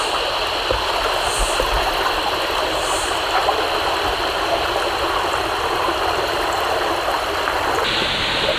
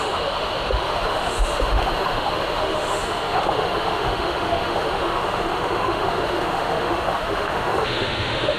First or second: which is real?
first